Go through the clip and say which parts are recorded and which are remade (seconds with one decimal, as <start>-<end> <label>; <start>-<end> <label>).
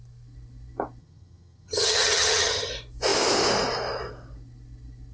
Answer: 0.0-1.0 recorded; 1.0-2.7 remade; 2.7-5.1 recorded